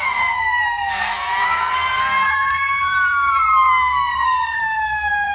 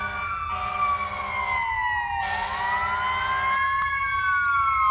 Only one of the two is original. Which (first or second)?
second